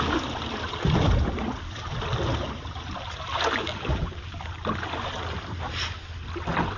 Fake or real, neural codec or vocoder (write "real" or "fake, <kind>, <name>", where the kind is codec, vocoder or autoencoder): real